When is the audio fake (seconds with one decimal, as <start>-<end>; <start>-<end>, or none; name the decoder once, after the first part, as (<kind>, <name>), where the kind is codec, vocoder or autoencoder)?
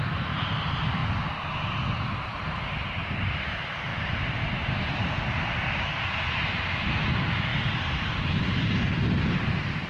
0.0-1.0 (vocoder, BigVGAN v2); 1.5-9.9